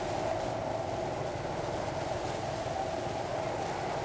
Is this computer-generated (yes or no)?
no